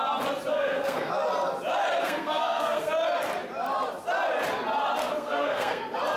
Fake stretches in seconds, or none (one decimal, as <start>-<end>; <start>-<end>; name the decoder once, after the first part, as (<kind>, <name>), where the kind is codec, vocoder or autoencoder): 0.5-1.1 (codec, SNAC); 2.0-2.9; 5.0-5.8